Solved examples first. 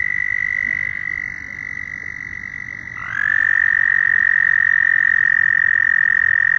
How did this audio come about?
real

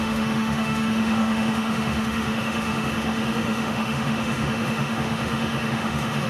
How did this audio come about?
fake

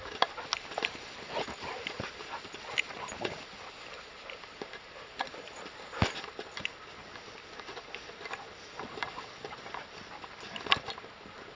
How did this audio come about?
real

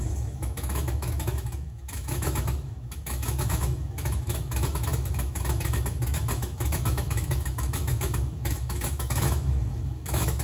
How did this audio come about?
fake